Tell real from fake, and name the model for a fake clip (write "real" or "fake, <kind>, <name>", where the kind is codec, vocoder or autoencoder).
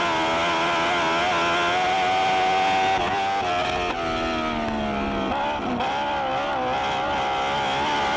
real